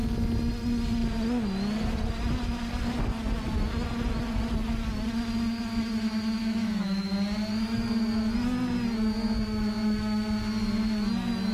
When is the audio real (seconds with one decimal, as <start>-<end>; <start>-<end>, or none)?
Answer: 0.0-6.4; 7.1-11.5